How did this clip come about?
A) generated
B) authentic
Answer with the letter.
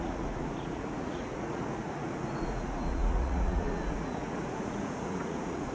A